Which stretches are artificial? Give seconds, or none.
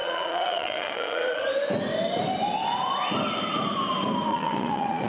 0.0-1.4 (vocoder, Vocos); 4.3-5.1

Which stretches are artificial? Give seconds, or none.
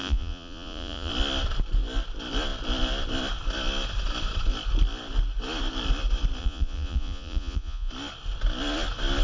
0.0-1.1 (vocoder, Vocos); 6.4-7.9